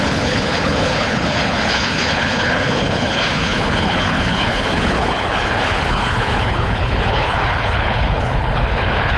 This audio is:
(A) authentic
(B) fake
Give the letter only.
B